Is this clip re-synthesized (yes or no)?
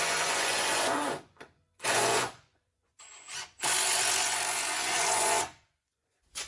yes